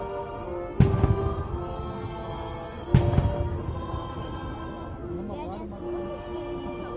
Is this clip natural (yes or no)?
yes